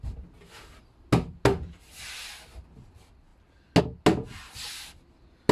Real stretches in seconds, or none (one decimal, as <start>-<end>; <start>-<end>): 0.0-5.5